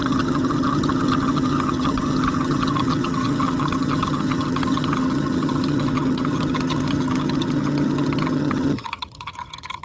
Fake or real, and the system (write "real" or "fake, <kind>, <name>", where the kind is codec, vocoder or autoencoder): fake, vocoder, HiFi-GAN